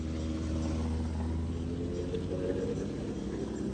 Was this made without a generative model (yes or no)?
yes